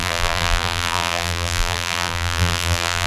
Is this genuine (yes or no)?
no